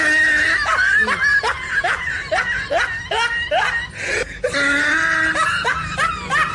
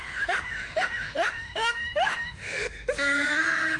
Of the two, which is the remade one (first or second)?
second